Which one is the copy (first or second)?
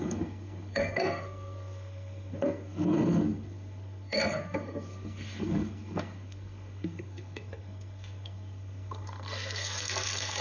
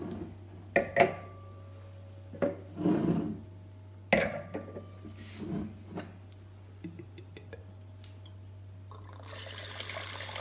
first